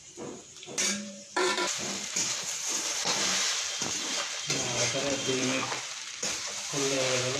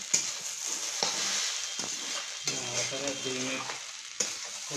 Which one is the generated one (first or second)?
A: first